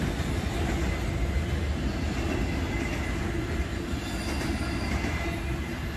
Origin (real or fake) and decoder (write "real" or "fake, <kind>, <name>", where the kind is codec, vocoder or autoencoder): real